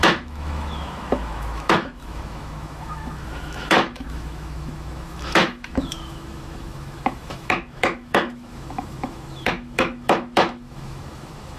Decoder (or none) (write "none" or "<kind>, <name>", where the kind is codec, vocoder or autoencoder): autoencoder, DAC-VAE